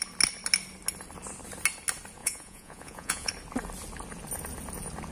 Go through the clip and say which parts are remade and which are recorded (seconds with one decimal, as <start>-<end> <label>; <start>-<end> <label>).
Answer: 0.0-2.2 recorded; 2.2-3.3 remade; 3.3-5.1 recorded